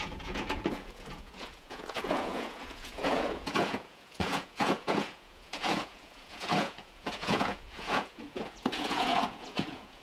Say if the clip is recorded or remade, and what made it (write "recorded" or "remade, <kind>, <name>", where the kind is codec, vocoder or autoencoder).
remade, vocoder, Vocos